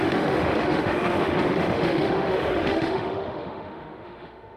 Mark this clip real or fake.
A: fake